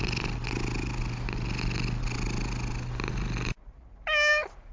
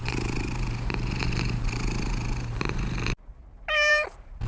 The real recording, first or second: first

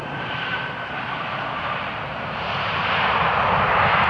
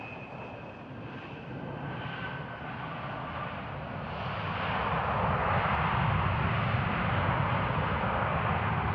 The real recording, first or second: second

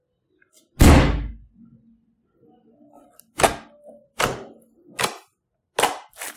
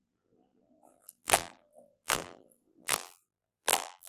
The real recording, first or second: first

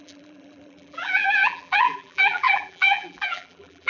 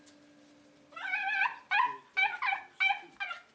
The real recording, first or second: second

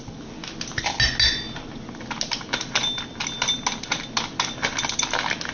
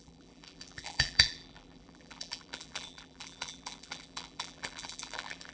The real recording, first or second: first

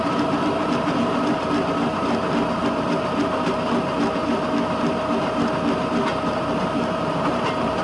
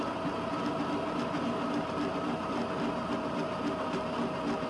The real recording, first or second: second